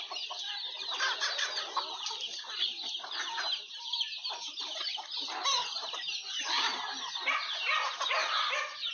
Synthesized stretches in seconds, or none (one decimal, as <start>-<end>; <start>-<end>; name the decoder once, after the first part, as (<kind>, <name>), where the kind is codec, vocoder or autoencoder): none